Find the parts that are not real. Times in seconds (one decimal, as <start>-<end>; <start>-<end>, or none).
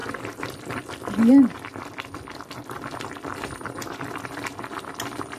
0.0-1.3; 3.3-4.3